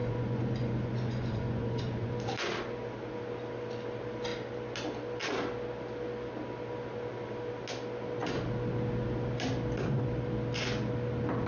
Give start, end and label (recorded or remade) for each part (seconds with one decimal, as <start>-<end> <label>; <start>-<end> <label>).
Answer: 0.0-2.1 remade; 2.1-11.5 recorded